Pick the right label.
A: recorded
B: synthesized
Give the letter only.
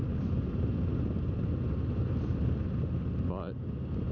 A